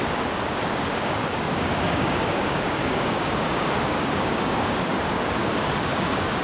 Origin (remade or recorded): remade